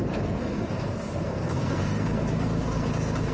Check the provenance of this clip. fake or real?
fake